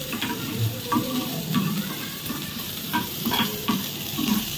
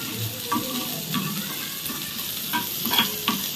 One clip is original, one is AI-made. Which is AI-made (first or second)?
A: first